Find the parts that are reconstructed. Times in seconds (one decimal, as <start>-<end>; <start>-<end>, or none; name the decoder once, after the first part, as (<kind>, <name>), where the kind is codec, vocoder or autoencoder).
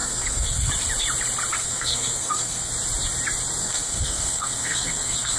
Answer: 0.0-0.7 (codec, SNAC); 1.6-2.7; 3.6-5.4